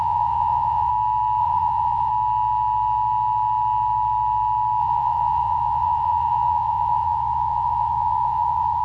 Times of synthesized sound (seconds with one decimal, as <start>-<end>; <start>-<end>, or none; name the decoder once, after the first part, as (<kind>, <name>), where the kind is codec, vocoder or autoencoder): 0.0-0.9 (vocoder, Vocos); 1.4-2.1; 4.8-8.8